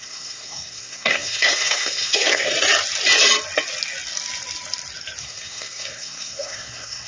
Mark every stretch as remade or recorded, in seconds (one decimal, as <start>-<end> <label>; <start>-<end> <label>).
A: 0.0-2.5 remade; 2.5-5.2 recorded; 5.2-7.1 remade